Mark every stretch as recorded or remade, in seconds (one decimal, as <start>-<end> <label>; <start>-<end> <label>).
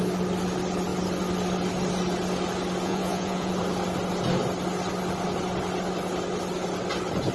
0.0-2.8 recorded; 2.8-3.5 remade; 3.5-7.3 recorded